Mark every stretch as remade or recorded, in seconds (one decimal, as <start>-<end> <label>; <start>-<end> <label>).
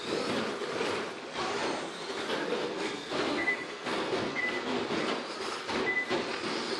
0.0-2.6 recorded; 2.6-4.4 remade; 4.4-6.8 recorded